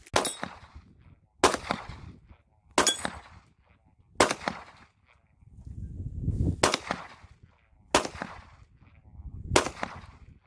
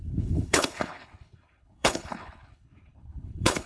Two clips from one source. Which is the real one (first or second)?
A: first